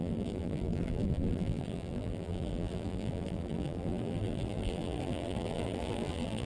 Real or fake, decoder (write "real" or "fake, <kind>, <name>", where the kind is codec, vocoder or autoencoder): fake, vocoder, BigVGAN v2